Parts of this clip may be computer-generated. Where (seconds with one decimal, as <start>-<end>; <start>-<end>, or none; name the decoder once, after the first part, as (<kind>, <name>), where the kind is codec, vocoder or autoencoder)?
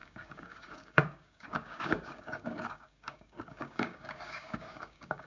0.0-5.3 (codec, DAC)